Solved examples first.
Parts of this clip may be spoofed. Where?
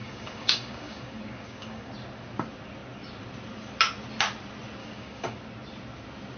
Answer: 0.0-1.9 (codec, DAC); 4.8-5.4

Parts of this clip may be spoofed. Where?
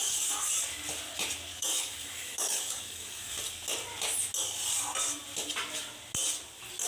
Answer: 0.0-0.6 (codec, DAC); 1.5-3.4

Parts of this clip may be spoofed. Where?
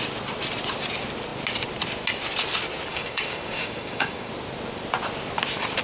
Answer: 2.9-4.3 (codec, DAC)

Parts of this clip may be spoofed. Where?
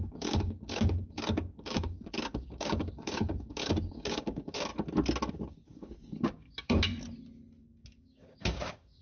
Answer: 0.0-4.7 (codec, DAC); 5.3-6.9; 7.6-9.0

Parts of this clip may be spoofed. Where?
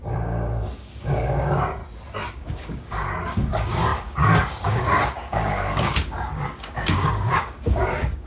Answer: 0.0-1.8 (codec, DAC); 2.3-8.3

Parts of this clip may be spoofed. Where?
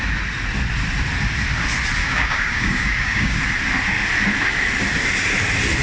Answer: 2.0-3.4 (codec, DAC)